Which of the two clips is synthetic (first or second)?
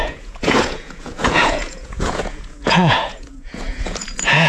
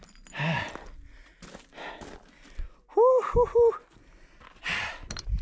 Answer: first